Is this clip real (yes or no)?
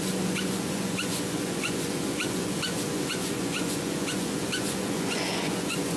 no